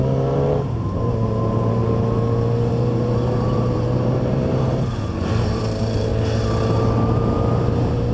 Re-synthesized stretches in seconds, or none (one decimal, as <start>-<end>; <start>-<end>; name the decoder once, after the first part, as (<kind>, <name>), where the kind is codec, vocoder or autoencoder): 0.0-1.8 (vocoder, BigVGAN v2); 2.7-6.1; 7.6-8.1